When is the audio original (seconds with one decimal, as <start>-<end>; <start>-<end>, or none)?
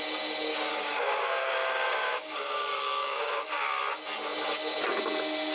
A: 0.0-0.5; 3.8-5.5